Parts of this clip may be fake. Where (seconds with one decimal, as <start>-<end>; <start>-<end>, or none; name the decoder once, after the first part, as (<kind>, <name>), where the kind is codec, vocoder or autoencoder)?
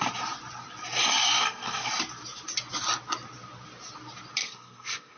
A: 1.4-1.9 (codec, SNAC); 4.4-5.2